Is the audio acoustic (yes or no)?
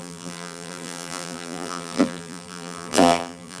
no